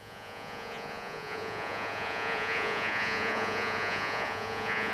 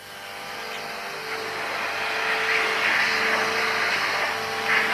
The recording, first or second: second